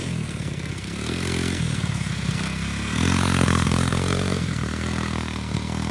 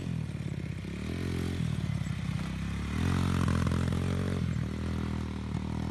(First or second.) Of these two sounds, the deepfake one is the first